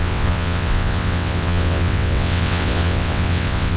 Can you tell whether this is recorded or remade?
remade